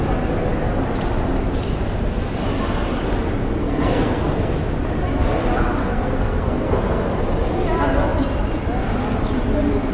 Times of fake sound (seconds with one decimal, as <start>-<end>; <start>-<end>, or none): 3.6-4.5; 5.8-7.0